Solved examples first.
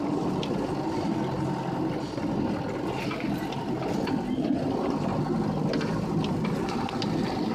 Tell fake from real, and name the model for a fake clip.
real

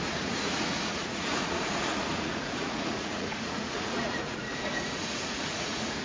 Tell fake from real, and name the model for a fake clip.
fake, vocoder, Vocos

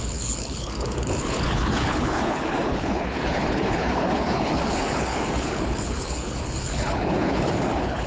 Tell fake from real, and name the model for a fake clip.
fake, codec, HILCodec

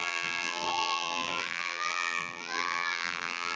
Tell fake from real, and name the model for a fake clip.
fake, vocoder, BigVGAN v2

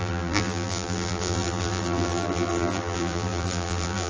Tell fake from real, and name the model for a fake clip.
fake, vocoder, BigVGAN v2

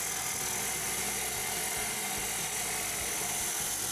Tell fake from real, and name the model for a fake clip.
real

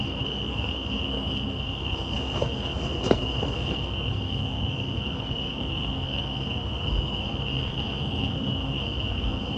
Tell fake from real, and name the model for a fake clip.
fake, codec, SNAC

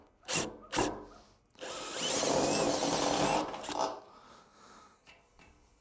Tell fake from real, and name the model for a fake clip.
real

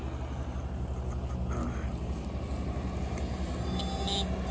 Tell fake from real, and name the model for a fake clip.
real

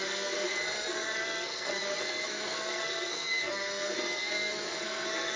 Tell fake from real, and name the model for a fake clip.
fake, codec, SNAC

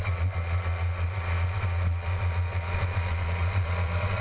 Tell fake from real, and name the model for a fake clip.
fake, vocoder, Vocos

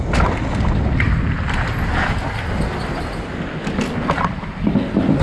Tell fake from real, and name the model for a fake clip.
real